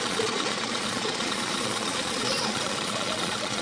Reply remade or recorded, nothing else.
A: remade